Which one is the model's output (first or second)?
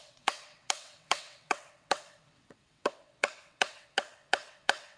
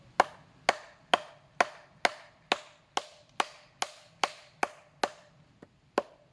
first